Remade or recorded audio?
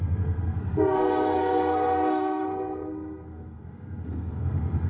remade